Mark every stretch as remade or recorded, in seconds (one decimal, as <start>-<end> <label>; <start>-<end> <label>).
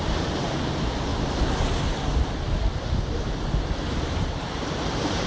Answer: 0.0-1.1 remade; 1.1-3.5 recorded; 3.5-5.3 remade